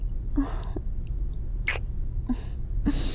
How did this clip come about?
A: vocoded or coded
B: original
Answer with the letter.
B